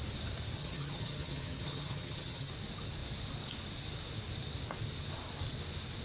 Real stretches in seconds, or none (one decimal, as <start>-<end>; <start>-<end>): 0.0-0.6; 2.5-6.0